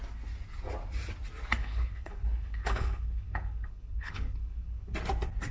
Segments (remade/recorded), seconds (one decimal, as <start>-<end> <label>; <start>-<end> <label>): 0.0-1.6 recorded; 1.6-4.9 remade; 4.9-5.5 recorded

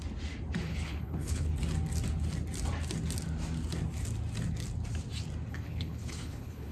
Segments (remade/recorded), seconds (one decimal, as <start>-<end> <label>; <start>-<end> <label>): 0.0-0.6 recorded; 0.6-1.5 remade; 1.5-5.5 recorded; 5.5-6.7 remade

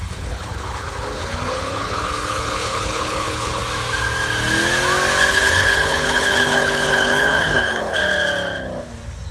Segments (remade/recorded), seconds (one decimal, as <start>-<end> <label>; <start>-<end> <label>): 0.0-3.6 remade; 3.6-5.3 recorded; 5.3-8.0 remade; 8.0-9.3 recorded